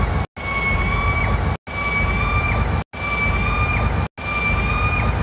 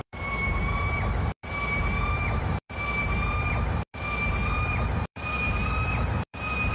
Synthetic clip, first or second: second